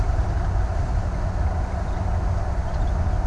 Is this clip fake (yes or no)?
no